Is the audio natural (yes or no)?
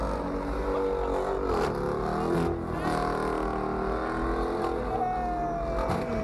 yes